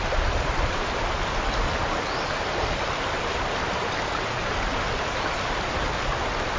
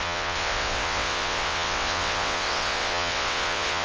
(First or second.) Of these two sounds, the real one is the first